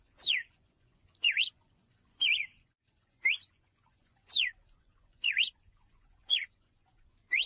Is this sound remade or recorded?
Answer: remade